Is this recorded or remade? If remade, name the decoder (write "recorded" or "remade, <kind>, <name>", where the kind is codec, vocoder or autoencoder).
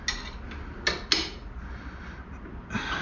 recorded